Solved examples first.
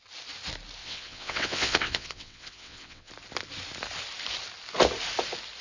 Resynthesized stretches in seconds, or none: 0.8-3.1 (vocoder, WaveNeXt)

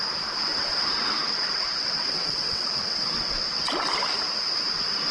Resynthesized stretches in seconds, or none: 0.5-3.6 (vocoder, WaveNeXt)

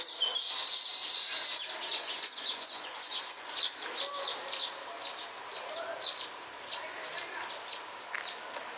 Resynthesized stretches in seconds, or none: 1.9-3.5 (vocoder, Vocos)

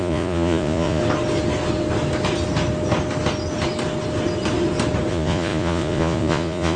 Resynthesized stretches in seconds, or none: 0.0-1.0 (vocoder, Vocos); 5.1-6.8

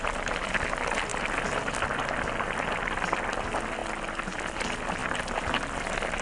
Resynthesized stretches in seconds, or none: none

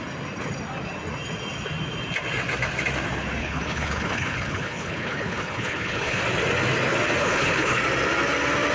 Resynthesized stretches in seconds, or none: 3.4-6.2 (codec, HILCodec); 7.2-7.8

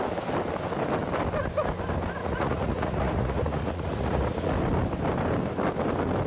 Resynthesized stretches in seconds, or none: 2.2-4.5 (vocoder, Vocos)